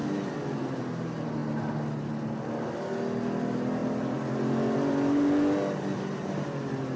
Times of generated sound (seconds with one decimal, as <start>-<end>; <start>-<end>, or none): none